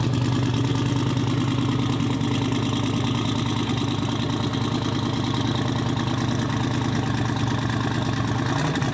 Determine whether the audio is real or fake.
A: real